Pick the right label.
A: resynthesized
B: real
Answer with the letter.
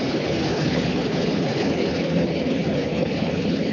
A